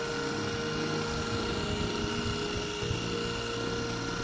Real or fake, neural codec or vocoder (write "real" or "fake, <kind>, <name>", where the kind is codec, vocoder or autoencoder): real